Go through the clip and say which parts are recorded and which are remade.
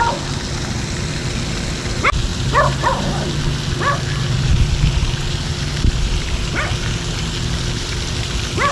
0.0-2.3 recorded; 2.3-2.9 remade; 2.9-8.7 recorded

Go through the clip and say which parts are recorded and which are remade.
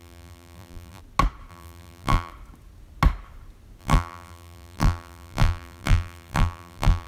0.0-1.0 remade; 1.0-1.5 recorded; 1.5-2.3 remade; 2.3-3.8 recorded; 3.8-7.1 remade